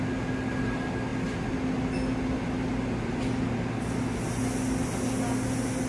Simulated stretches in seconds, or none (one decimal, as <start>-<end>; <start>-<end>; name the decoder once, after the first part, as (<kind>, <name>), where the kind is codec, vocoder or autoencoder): none